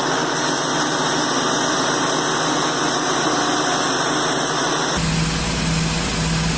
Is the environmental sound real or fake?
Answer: real